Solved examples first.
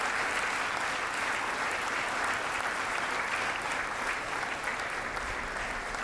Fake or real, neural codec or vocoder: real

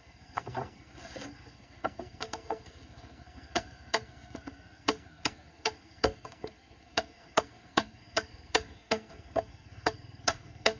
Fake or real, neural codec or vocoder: fake, codec, SNAC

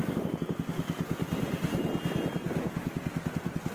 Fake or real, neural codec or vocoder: real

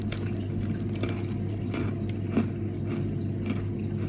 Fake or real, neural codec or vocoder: real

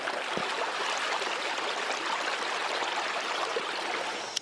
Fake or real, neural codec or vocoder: real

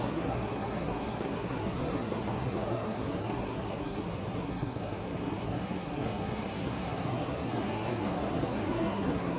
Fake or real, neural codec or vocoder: fake, codec, SNAC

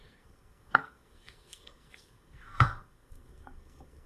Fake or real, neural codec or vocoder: fake, codec, SNAC